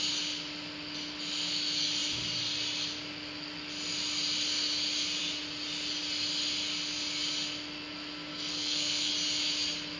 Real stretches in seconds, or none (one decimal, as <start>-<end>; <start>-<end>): 0.0-8.3; 9.1-10.0